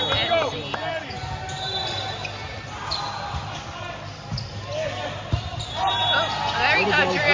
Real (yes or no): yes